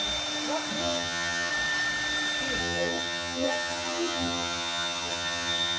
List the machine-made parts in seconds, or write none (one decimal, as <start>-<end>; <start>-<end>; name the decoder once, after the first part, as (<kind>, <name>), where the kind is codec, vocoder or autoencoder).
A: 0.8-1.5 (vocoder, HiFi-GAN); 2.6-5.8